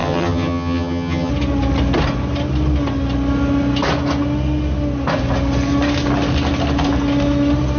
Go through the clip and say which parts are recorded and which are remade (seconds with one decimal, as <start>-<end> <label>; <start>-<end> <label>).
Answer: 0.0-1.3 remade; 1.3-7.8 recorded